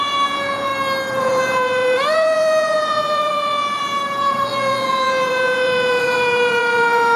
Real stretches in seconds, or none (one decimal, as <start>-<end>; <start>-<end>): 0.7-1.2